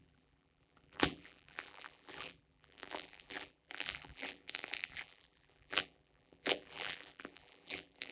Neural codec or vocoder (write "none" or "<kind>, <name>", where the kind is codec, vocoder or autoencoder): vocoder, BigVGAN v2